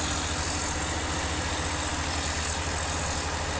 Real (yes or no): yes